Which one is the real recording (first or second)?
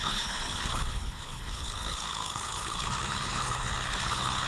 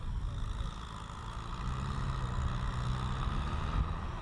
second